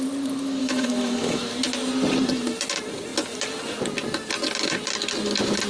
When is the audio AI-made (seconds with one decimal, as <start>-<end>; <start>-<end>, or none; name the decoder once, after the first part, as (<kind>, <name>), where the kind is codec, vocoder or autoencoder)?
0.6-1.4 (autoencoder, DAC-VAE)